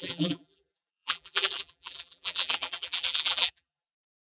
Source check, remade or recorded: remade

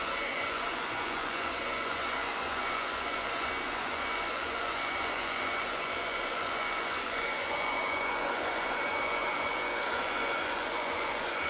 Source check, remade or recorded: remade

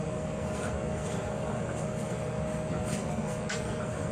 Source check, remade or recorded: remade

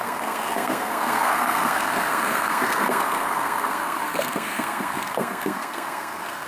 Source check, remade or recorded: remade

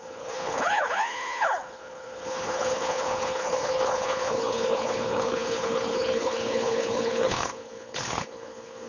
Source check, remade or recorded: remade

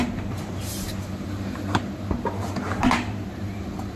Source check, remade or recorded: remade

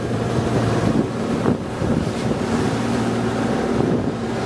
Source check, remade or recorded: remade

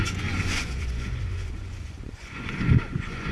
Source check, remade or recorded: remade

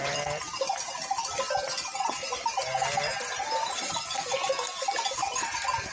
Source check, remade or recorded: recorded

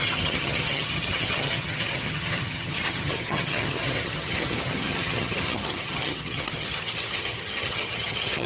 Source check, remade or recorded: remade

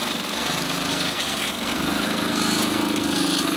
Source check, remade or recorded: remade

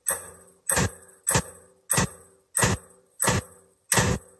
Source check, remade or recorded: recorded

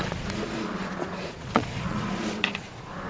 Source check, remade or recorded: remade